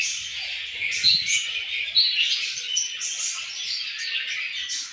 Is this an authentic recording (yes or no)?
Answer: yes